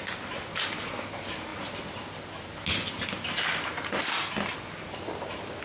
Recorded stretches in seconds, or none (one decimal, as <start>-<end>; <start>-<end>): 0.0-5.6